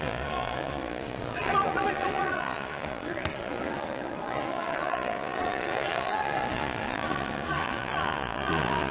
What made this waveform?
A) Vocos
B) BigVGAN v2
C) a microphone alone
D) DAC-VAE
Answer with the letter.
A